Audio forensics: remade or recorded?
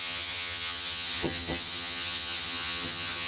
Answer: remade